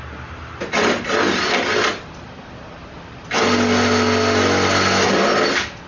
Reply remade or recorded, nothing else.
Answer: recorded